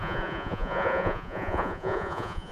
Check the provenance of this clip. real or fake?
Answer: fake